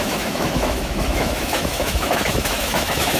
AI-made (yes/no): yes